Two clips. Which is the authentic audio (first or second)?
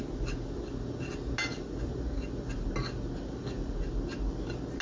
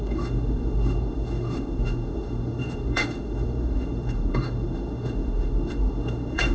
first